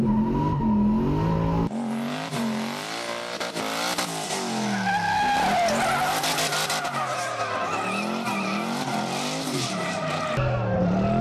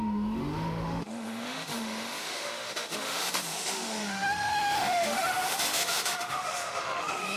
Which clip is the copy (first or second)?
second